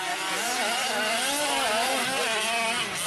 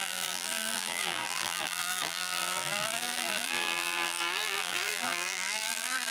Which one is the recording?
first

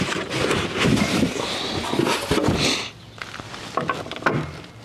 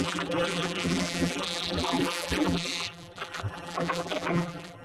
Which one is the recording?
first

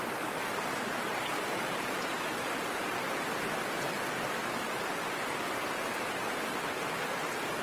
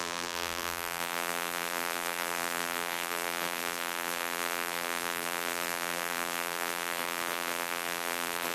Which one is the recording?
first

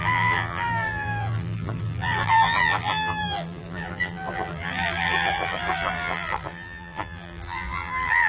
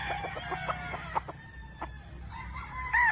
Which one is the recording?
second